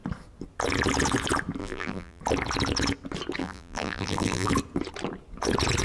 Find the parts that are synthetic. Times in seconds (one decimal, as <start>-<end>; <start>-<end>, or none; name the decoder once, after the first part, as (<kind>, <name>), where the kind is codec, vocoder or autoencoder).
1.6-2.2 (vocoder, BigVGAN v2); 3.4-4.5